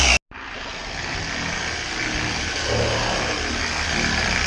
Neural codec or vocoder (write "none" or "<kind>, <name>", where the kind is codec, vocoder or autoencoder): none